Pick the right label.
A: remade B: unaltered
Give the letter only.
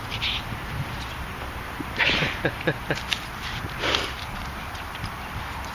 A